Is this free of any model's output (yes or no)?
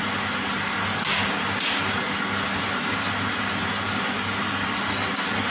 yes